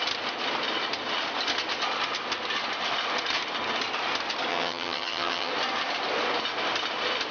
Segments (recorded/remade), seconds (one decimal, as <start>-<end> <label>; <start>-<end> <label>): 0.0-4.5 recorded; 4.5-5.5 remade; 5.5-7.3 recorded